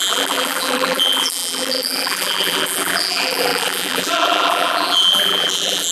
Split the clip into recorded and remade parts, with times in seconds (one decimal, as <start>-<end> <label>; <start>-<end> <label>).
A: 0.0-5.9 remade